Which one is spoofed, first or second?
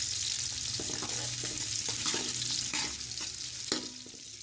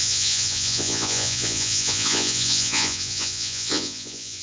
second